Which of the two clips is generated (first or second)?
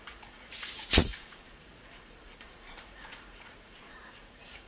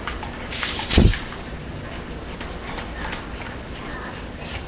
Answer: first